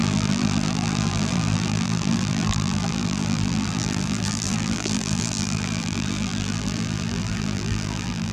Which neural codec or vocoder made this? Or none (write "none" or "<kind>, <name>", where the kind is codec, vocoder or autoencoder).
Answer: vocoder, BigVGAN v2